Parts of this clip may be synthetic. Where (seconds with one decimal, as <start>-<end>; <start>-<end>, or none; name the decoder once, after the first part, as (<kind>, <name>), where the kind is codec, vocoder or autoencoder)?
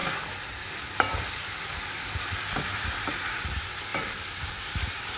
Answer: 0.0-5.2 (vocoder, BigVGAN v2)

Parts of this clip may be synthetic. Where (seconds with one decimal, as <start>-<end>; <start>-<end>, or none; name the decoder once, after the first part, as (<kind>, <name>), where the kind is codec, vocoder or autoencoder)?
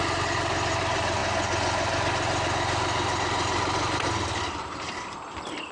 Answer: 0.0-1.2 (vocoder, BigVGAN v2); 4.6-5.7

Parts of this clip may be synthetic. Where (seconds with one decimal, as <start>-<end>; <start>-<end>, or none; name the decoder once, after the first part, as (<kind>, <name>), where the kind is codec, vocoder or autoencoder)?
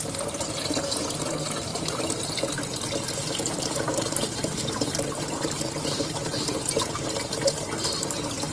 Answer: 1.7-2.2 (vocoder, BigVGAN v2); 3.9-5.7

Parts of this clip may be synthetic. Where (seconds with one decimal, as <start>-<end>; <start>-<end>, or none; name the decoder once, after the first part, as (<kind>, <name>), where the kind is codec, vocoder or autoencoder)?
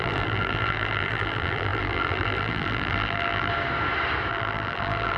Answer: 0.0-3.5 (vocoder, BigVGAN v2); 4.3-5.2